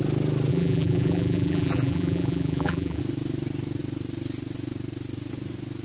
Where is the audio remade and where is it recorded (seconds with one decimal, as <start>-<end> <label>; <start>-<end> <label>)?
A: 0.0-0.5 recorded; 0.5-3.0 remade; 3.0-5.8 recorded